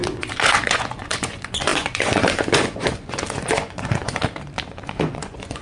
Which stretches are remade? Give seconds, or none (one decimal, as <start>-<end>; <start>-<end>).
0.0-4.2; 4.7-5.6